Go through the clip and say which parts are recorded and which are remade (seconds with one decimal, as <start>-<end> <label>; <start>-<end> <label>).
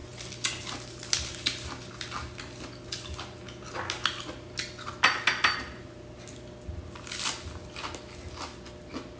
0.0-9.2 recorded